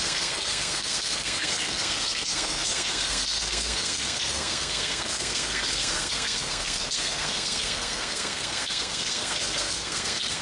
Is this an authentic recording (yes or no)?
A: no